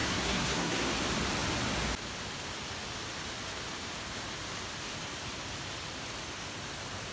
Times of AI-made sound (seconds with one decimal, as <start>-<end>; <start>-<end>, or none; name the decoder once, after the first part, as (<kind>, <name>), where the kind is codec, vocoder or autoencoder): 0.0-0.9 (codec, SNAC)